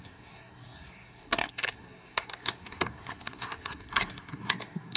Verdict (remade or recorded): remade